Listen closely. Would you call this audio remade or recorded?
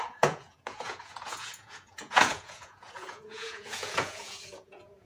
remade